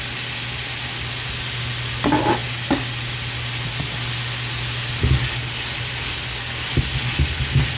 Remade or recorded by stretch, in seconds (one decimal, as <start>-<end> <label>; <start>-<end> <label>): 0.0-7.8 recorded